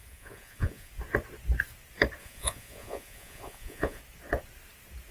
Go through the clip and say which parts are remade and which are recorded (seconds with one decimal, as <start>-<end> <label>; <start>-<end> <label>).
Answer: 0.0-0.9 remade; 0.9-2.2 recorded; 2.2-4.0 remade; 4.0-5.1 recorded